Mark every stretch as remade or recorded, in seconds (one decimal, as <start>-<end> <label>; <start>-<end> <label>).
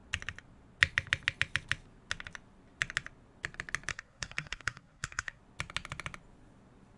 0.0-3.9 recorded; 3.9-5.4 remade; 5.4-7.0 recorded